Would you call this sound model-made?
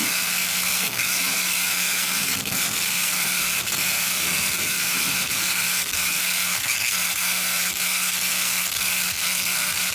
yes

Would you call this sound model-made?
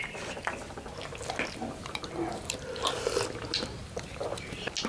no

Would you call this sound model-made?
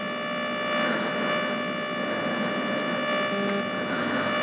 no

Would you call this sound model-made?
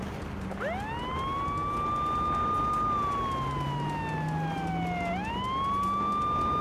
no